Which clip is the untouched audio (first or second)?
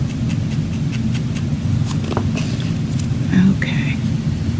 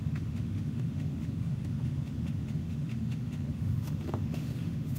first